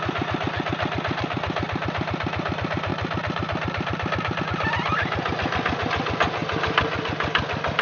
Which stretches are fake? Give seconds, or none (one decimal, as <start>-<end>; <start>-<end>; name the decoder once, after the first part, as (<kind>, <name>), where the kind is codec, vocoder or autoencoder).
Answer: 2.9-4.4 (vocoder, BigVGAN v2); 6.4-7.0